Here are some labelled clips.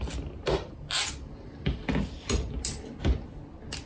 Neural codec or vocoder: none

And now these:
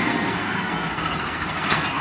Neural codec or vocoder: codec, SNAC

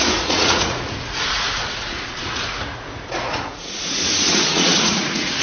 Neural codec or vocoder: vocoder, Vocos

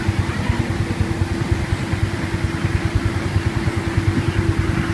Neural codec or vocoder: none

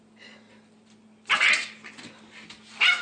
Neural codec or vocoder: none